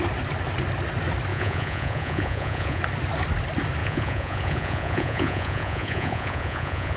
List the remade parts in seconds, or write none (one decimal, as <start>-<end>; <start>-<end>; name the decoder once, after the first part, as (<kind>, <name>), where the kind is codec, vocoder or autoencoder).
1.3-2.8 (vocoder, Vocos); 3.8-7.0